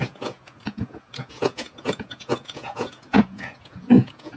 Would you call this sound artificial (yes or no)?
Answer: yes